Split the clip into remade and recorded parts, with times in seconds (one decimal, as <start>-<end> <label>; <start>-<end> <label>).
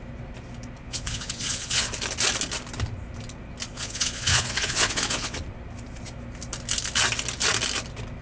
0.0-0.8 recorded; 0.8-1.9 remade; 1.9-3.7 recorded; 3.7-5.4 remade; 5.4-8.2 recorded